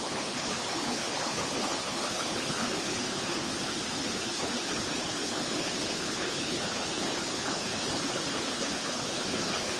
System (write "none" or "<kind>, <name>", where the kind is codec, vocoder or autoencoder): codec, HILCodec